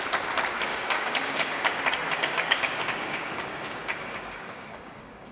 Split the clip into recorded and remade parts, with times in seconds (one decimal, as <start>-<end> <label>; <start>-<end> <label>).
0.0-0.7 recorded; 0.7-1.8 remade; 1.8-2.2 recorded; 2.2-5.3 remade